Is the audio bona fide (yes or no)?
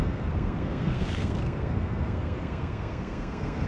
no